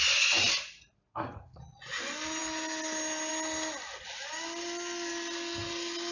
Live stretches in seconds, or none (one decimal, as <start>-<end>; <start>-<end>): 0.0-1.1; 1.6-6.1